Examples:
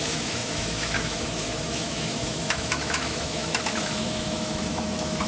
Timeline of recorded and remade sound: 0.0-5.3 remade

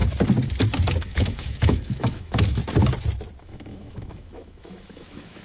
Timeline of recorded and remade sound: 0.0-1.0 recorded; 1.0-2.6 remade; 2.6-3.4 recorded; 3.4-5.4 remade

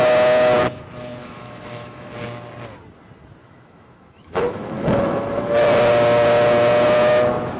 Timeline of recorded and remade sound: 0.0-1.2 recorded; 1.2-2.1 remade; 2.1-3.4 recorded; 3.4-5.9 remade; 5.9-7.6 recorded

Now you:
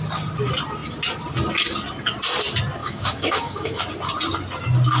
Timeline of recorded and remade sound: 0.0-2.8 recorded; 2.8-3.8 remade; 3.8-5.0 recorded

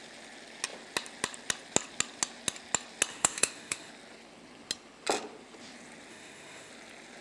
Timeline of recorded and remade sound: 0.0-3.1 recorded; 3.1-3.9 remade; 3.9-6.1 recorded; 6.1-6.7 remade; 6.7-7.2 recorded

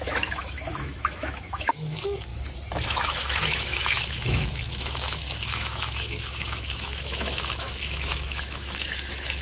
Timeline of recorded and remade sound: 0.0-2.3 remade; 2.3-2.9 recorded; 2.9-9.4 remade